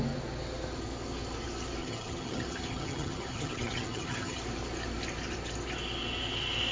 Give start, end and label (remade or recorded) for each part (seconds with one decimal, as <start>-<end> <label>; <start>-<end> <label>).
0.0-1.8 recorded; 1.8-4.4 remade; 4.4-6.7 recorded